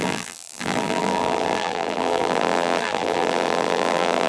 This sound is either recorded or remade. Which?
remade